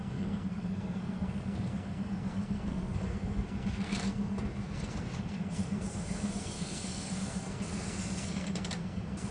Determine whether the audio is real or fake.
fake